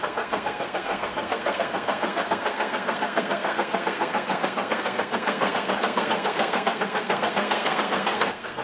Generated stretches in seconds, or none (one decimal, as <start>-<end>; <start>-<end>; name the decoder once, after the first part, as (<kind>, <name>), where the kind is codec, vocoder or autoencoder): 0.0-8.6 (codec, SNAC)